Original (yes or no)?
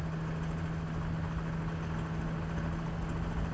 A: yes